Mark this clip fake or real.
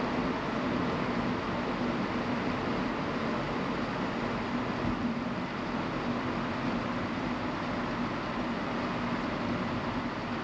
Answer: real